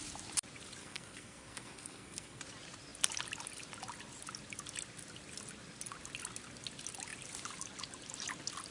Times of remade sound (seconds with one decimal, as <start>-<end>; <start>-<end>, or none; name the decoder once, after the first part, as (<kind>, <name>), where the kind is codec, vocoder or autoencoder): 0.8-2.4 (codec, SNAC)